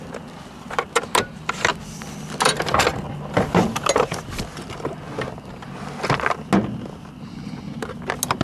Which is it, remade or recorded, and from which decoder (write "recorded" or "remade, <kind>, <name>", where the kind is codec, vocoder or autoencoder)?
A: recorded